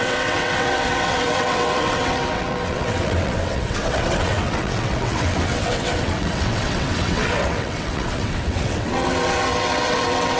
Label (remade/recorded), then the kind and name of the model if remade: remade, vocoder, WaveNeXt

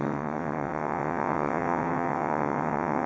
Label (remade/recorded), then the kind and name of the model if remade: remade, vocoder, WaveNeXt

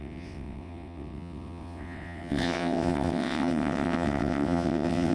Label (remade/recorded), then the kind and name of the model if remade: remade, vocoder, WaveNeXt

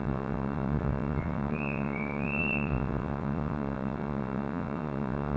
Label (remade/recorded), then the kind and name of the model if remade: remade, vocoder, WaveNeXt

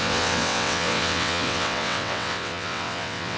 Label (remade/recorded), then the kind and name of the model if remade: remade, vocoder, WaveNeXt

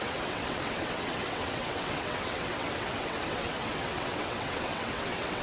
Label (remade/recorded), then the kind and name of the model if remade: remade, vocoder, WaveNeXt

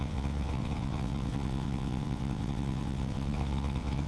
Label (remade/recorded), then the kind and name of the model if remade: remade, vocoder, WaveNeXt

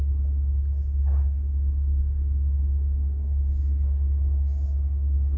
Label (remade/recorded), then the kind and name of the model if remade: recorded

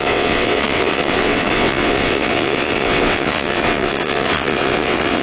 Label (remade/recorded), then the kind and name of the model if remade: remade, vocoder, WaveNeXt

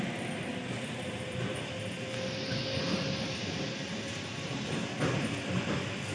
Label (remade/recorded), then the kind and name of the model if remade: recorded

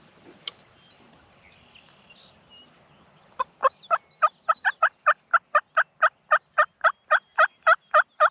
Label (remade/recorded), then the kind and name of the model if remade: recorded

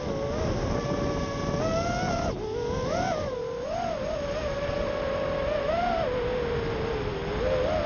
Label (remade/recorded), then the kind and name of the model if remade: recorded